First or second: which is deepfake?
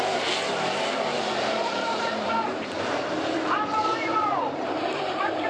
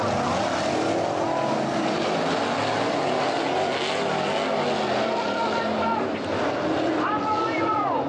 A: first